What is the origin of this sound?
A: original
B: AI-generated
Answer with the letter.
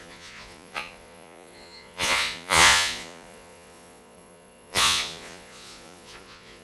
B